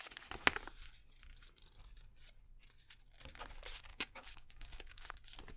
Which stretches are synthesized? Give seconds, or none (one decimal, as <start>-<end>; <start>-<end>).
3.9-5.1